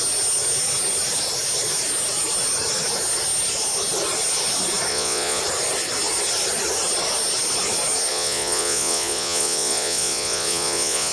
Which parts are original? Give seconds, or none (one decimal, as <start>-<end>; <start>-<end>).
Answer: 0.0-4.9; 5.4-8.1